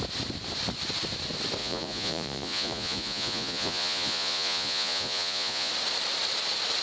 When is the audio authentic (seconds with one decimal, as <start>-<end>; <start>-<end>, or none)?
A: 0.0-1.6; 5.7-6.8